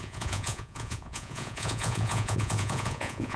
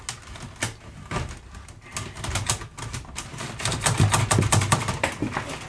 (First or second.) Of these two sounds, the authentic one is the second